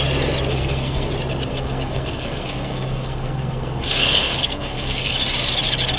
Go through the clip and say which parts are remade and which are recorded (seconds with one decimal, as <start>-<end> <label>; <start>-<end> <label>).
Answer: 0.0-0.5 recorded; 0.5-1.1 remade; 1.1-1.5 recorded; 1.5-5.1 remade; 5.1-6.0 recorded